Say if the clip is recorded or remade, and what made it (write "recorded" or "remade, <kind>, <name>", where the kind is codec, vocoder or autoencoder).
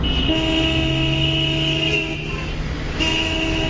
recorded